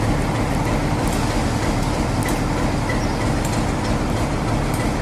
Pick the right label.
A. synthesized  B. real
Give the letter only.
B